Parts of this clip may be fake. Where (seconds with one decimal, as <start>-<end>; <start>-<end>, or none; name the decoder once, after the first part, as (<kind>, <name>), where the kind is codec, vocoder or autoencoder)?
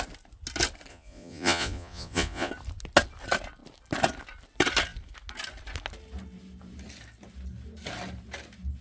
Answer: 0.9-2.5 (vocoder, Vocos)